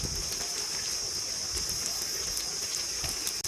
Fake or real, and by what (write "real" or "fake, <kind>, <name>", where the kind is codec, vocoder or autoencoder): real